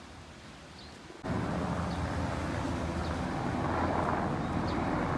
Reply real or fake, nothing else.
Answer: real